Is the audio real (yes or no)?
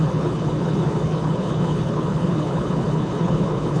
no